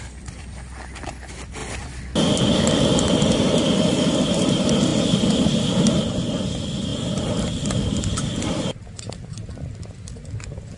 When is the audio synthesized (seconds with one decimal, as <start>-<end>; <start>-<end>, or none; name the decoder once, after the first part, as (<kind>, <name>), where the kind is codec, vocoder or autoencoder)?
0.0-4.9 (vocoder, BigVGAN v2); 6.4-10.8